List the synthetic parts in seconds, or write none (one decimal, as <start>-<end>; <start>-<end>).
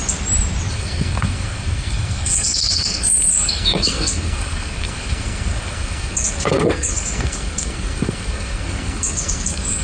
0.7-9.8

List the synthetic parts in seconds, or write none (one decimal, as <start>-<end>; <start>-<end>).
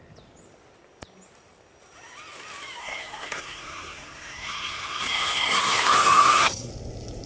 2.8-6.7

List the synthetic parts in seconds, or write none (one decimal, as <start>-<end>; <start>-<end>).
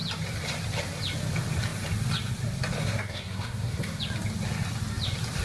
2.8-4.0